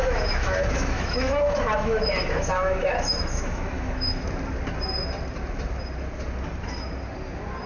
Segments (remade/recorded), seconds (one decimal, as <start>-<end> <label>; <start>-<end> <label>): 0.0-4.2 remade; 4.2-7.7 recorded